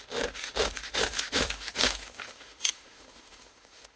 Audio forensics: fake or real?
fake